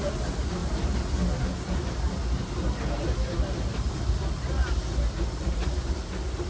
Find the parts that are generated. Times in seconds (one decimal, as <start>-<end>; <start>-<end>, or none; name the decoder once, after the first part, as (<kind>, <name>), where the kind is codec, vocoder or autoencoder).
none